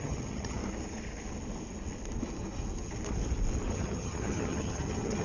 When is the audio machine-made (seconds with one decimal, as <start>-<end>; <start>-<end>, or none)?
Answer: 0.0-0.6; 3.7-5.2